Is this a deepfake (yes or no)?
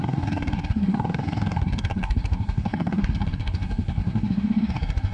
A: yes